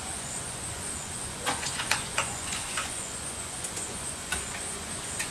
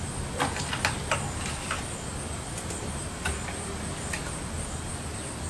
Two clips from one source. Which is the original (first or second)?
second